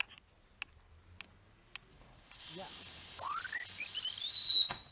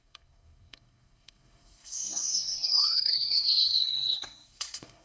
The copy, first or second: second